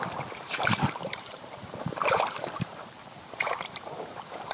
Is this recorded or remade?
remade